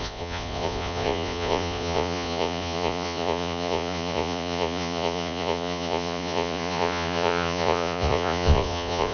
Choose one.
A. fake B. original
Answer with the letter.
A